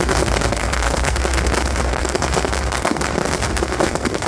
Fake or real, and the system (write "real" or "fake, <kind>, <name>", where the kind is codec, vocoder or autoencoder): fake, codec, SNAC